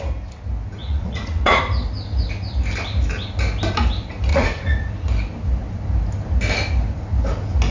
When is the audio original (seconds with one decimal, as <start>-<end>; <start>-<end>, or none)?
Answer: 0.0-0.8; 1.6-4.3; 4.9-7.7